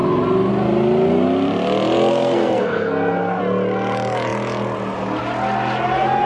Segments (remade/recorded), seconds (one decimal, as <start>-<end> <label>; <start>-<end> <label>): 0.0-2.1 recorded; 2.1-3.4 remade; 3.4-6.3 recorded